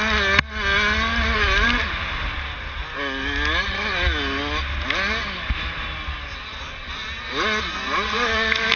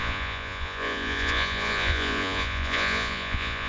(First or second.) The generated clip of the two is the second